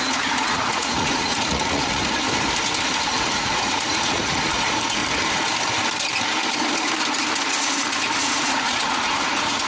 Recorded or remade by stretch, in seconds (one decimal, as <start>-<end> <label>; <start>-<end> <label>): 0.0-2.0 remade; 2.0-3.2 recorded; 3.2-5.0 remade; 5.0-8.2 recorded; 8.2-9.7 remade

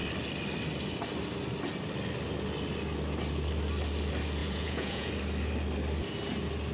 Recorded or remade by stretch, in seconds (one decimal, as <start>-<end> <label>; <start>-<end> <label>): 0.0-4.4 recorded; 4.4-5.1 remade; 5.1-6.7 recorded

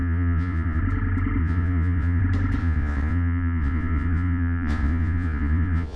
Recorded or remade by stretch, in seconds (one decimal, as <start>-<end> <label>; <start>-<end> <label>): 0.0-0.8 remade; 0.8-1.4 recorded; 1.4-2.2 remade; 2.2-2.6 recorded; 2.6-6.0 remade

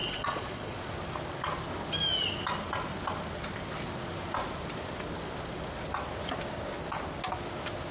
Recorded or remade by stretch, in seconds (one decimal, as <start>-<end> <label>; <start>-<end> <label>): 0.0-0.9 remade; 0.9-7.9 recorded